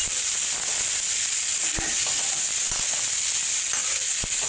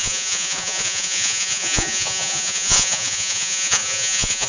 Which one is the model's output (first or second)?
second